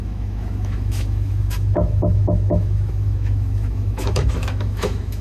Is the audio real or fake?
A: fake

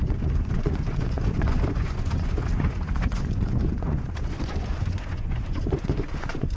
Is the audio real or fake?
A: fake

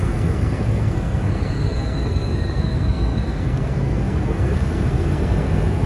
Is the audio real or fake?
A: fake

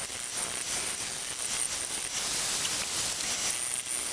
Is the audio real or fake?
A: real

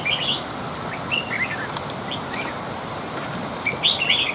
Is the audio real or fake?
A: real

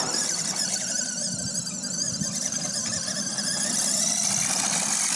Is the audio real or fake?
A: real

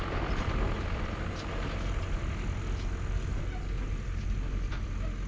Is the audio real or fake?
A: real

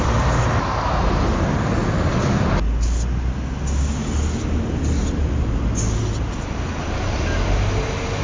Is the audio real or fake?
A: real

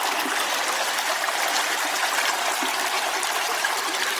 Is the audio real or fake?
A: real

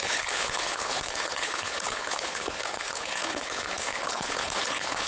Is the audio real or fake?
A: fake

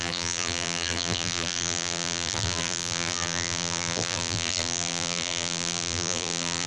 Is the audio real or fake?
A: fake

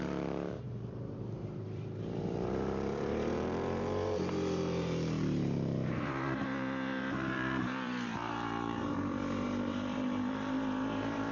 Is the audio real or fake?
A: fake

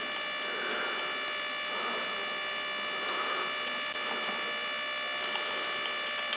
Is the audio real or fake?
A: real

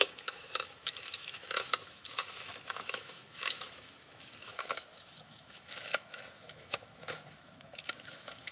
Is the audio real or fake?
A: fake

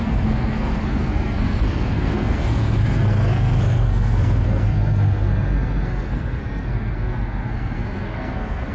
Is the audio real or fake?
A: fake